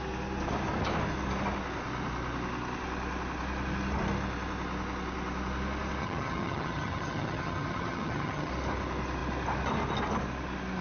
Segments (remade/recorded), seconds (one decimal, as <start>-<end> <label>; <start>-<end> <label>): 0.0-6.0 recorded; 6.0-8.5 remade; 8.5-10.8 recorded